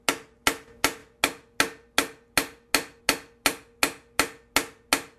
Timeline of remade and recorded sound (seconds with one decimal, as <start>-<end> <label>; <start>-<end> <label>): 0.0-5.2 recorded